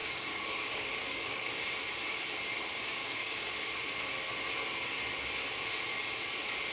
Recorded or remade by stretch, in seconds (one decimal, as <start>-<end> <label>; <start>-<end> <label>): 0.0-1.5 remade; 1.5-3.0 recorded; 3.0-3.5 remade; 3.5-6.7 recorded